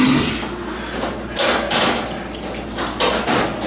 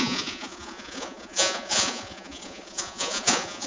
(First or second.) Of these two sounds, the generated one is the second